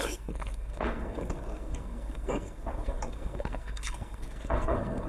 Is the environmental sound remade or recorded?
remade